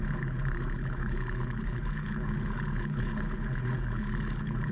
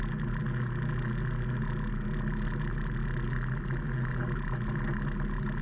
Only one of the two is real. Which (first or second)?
second